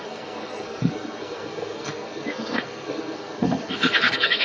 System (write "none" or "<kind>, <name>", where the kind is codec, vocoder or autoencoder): codec, SNAC